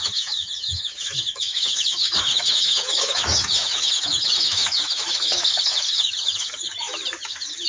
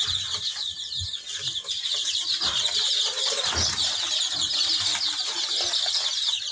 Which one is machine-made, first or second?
first